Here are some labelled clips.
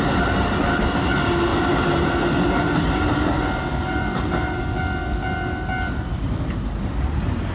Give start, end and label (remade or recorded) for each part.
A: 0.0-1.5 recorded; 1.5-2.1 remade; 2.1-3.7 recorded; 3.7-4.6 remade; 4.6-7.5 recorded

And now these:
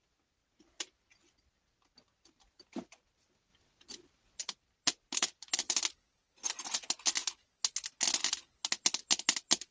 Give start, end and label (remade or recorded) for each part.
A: 0.0-9.7 recorded